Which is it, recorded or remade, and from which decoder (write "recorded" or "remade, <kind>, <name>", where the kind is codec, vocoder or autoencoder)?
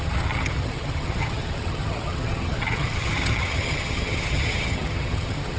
remade, vocoder, HiFi-GAN